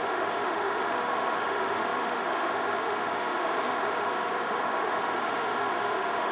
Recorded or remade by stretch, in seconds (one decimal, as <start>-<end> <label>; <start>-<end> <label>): 0.0-6.3 remade